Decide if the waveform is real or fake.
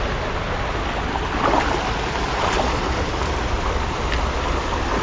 real